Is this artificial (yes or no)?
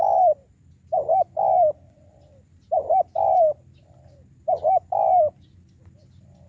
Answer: no